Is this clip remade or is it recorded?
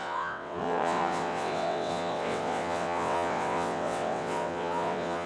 remade